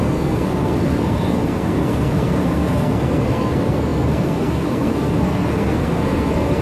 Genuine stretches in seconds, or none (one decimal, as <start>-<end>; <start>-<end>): none